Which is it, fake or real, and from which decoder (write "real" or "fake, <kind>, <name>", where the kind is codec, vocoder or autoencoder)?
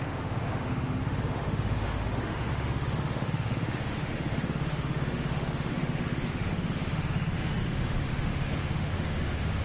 fake, autoencoder, DAC-VAE